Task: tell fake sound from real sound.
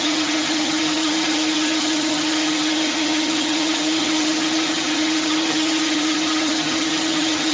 fake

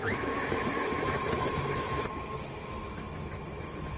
fake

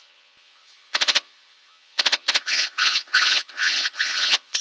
fake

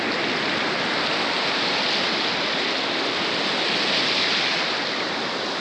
real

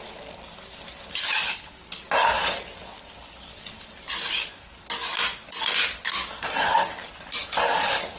real